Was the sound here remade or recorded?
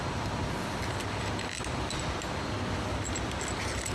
recorded